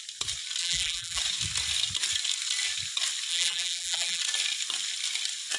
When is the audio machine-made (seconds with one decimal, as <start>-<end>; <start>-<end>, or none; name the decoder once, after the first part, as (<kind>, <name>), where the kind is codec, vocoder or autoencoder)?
0.6-1.2 (vocoder, BigVGAN v2); 3.3-4.2